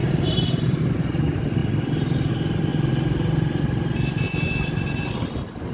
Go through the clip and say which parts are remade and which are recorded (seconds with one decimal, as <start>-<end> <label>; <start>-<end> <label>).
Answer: 0.0-0.8 remade; 0.8-5.7 recorded